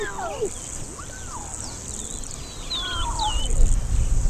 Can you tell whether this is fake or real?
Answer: real